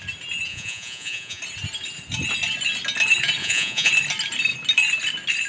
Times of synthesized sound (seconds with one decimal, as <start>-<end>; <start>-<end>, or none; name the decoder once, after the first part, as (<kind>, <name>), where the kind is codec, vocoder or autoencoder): 0.5-1.4 (vocoder, Vocos); 3.4-3.9